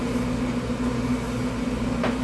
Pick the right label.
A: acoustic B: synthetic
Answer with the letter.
A